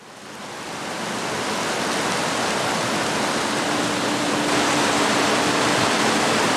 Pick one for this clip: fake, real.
real